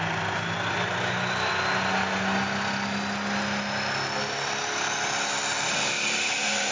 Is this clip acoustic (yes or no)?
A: yes